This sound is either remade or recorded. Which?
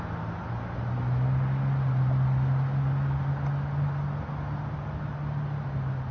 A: recorded